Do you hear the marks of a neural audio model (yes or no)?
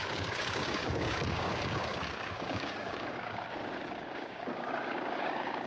yes